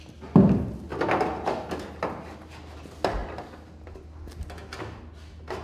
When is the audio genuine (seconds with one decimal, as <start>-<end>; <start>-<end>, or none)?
0.0-5.6